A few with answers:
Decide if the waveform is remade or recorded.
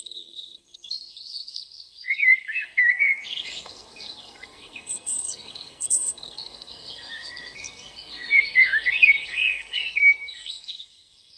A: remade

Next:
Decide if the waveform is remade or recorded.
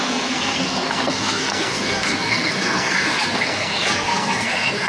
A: remade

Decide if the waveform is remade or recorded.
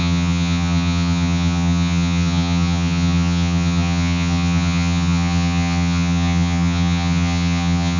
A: remade